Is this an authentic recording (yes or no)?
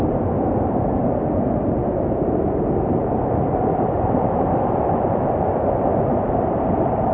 yes